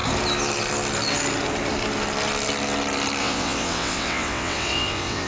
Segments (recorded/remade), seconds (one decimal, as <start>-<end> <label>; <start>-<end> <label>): 0.0-3.2 recorded; 3.2-5.3 remade